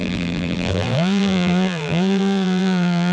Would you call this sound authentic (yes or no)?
no